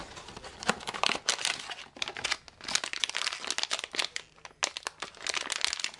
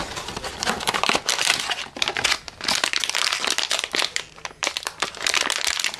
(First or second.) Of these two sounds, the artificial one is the second